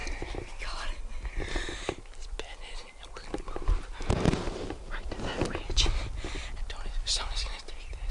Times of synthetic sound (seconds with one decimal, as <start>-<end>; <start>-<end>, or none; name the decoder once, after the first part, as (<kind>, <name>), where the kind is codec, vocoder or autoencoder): none